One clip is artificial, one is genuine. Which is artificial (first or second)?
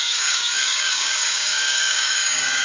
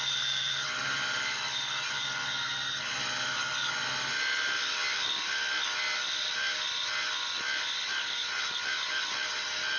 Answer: first